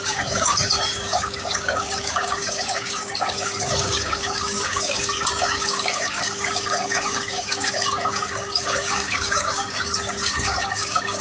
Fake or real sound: fake